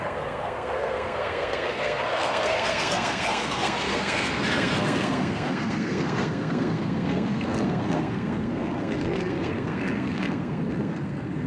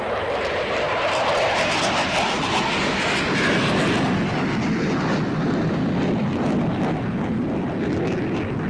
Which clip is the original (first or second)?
second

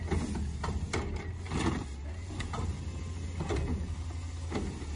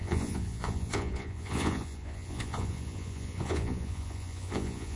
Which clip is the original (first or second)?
first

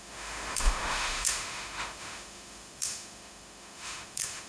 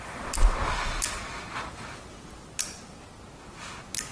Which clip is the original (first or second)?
second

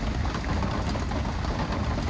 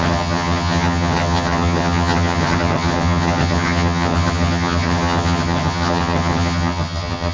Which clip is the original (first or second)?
first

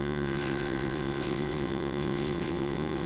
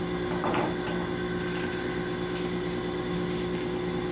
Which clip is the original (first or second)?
second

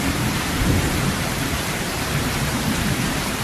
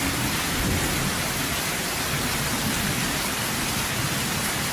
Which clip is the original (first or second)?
second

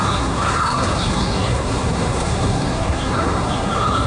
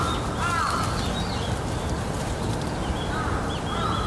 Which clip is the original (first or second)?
second